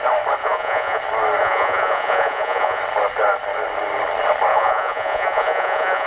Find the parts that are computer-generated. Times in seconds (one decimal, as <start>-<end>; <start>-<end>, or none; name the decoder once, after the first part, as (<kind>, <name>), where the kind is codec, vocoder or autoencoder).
0.4-1.0 (vocoder, Vocos); 1.4-2.8; 4.5-6.1